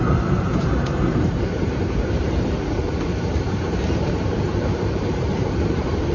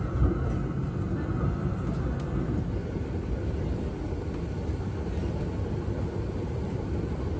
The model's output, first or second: first